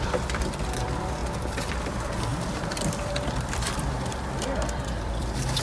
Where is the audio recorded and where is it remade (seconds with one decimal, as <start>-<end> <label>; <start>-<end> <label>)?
0.0-1.2 remade; 1.2-1.8 recorded; 1.8-5.6 remade